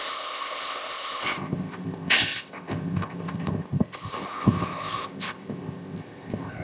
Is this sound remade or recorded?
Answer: remade